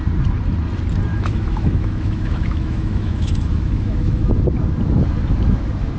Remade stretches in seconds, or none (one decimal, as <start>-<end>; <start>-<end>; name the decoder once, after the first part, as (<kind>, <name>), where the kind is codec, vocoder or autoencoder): 1.1-4.3 (autoencoder, DAC-VAE)